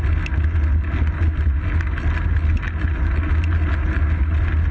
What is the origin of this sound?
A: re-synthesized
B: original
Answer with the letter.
B